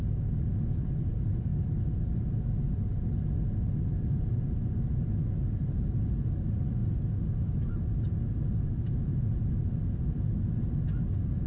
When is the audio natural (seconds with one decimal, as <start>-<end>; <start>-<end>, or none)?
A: 0.0-11.5

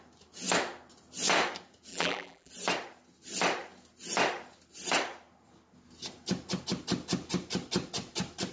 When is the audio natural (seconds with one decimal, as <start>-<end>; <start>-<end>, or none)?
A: 0.0-1.9; 2.5-8.5

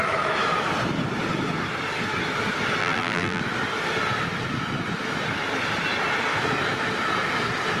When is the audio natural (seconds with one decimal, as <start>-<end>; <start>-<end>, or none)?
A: 0.0-2.8; 3.4-7.8

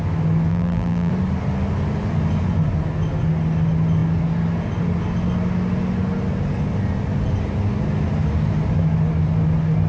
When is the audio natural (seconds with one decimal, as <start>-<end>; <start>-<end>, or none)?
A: 0.0-0.5; 1.1-9.9

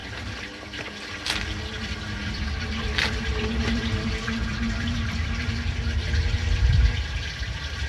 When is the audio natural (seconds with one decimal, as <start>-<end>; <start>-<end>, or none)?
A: 0.0-2.2; 6.7-7.9

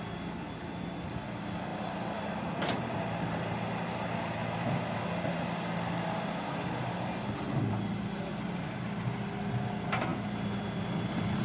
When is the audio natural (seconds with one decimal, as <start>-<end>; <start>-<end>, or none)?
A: 0.0-1.7; 3.0-10.1; 10.9-11.4

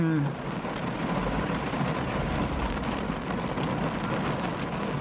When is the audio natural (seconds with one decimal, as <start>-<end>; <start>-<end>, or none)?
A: 0.0-1.2; 2.6-5.0